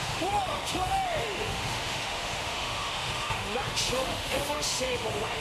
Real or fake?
fake